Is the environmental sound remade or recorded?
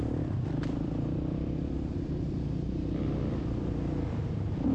remade